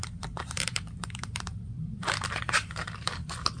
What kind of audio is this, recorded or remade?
remade